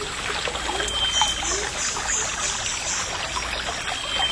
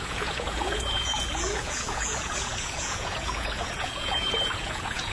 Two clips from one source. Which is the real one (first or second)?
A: first